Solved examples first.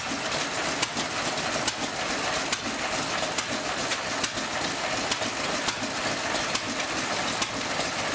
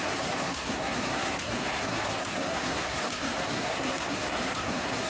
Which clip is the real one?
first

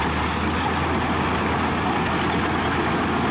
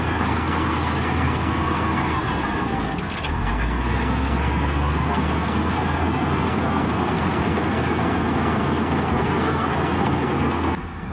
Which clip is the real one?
first